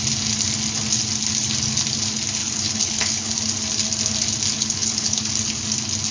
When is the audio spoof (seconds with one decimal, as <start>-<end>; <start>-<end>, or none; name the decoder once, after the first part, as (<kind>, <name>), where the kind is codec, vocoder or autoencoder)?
2.4-3.3 (codec, HILCodec); 4.5-5.2